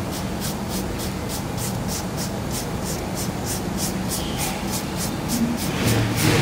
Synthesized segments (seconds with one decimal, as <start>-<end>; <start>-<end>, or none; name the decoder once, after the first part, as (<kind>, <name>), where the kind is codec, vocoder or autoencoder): none